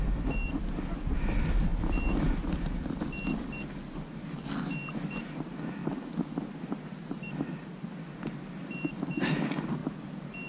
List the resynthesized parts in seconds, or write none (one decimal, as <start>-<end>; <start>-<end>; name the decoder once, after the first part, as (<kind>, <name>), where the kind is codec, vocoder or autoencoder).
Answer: none

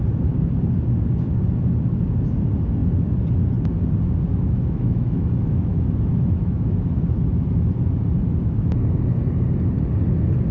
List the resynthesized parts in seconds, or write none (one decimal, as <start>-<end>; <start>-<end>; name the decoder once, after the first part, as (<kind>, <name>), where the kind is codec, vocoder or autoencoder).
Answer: 4.3-6.6 (autoencoder, DAC-VAE)

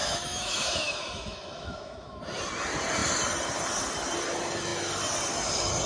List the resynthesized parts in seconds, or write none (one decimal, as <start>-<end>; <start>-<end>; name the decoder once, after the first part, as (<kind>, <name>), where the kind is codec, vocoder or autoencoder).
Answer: 0.0-2.2 (autoencoder, DAC-VAE)

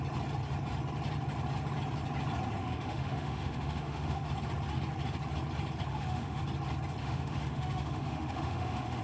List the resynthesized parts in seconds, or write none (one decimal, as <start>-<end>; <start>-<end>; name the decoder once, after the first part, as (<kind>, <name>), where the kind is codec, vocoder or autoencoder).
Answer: 2.6-4.3 (autoencoder, DAC-VAE); 5.9-6.4; 7.0-9.0